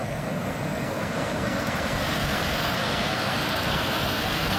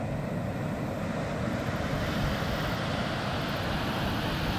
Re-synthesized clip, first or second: first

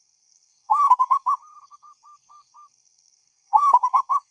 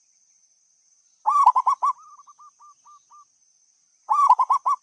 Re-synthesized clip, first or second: first